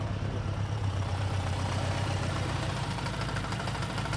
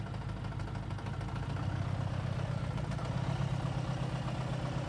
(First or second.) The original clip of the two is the second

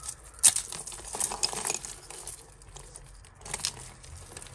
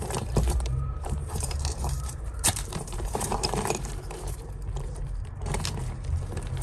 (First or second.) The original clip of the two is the first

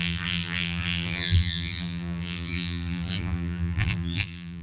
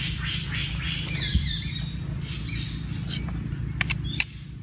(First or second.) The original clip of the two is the second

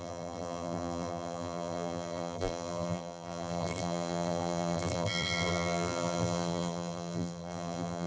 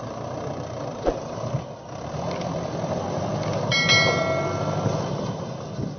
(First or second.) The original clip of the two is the second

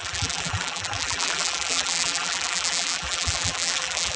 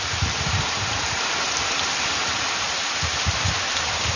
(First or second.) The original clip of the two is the second